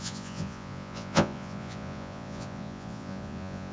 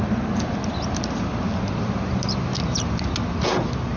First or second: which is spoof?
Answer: first